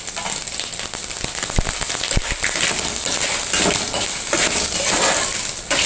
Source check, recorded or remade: recorded